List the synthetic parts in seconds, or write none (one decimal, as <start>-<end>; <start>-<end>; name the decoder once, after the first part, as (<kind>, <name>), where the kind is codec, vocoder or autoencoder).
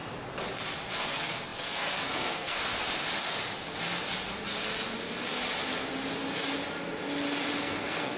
0.9-2.7 (codec, SNAC); 7.6-8.2